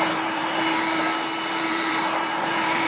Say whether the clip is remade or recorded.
remade